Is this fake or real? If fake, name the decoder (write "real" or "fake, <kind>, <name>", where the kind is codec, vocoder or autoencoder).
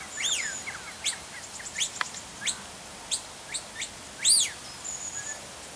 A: real